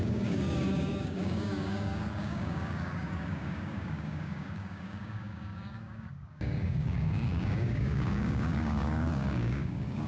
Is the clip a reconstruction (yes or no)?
yes